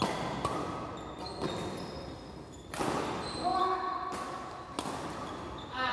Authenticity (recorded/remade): recorded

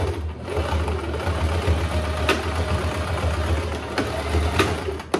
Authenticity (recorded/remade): recorded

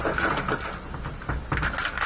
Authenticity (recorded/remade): recorded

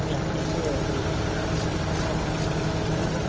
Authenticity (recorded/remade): recorded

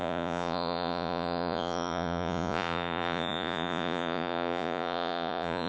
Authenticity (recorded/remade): remade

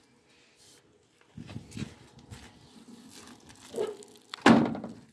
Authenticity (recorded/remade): recorded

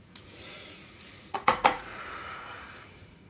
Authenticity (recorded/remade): remade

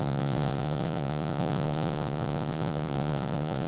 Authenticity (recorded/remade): remade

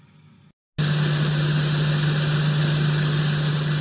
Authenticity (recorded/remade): recorded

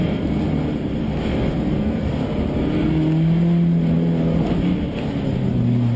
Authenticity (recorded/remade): recorded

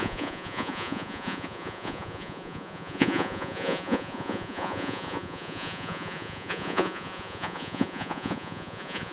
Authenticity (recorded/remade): remade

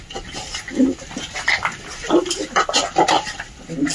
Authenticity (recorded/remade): recorded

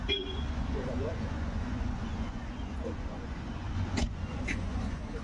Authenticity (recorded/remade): remade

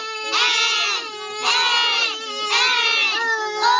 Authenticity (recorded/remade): recorded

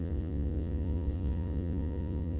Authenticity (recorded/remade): remade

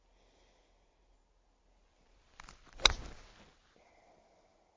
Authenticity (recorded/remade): recorded